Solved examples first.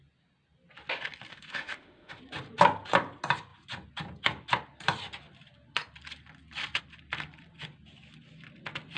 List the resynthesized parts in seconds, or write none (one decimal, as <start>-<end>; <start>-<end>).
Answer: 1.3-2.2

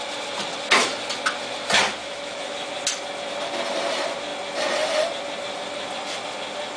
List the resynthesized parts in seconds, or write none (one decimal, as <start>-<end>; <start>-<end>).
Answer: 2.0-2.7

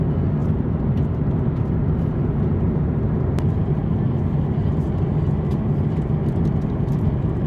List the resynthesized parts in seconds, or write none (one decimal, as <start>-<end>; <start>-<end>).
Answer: none